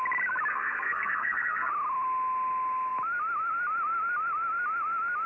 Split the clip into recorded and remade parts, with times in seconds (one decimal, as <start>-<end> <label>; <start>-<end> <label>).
0.0-0.5 recorded; 0.5-1.7 remade; 1.7-5.3 recorded